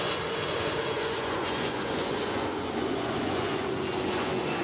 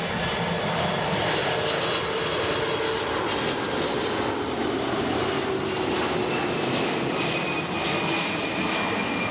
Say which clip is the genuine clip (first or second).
second